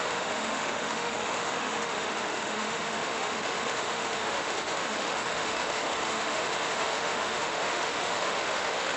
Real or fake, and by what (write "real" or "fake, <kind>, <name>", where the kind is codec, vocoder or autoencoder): fake, autoencoder, DAC-VAE